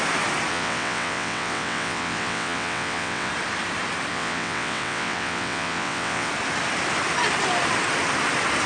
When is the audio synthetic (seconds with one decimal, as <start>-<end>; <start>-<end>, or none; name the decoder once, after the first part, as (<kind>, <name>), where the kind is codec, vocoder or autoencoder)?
0.5-3.3 (vocoder, WaveNeXt); 4.1-6.3